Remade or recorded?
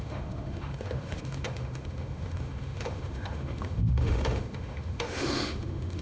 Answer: remade